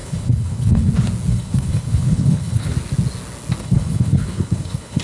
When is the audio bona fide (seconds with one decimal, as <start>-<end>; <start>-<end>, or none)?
0.9-1.3; 2.7-3.6